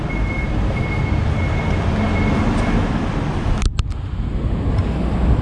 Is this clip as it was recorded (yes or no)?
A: yes